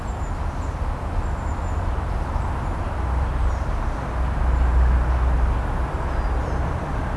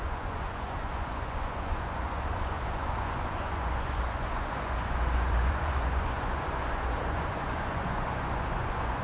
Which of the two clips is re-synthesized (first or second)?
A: second